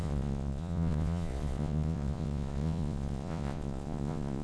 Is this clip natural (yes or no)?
no